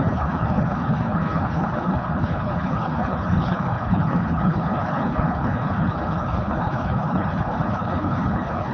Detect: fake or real fake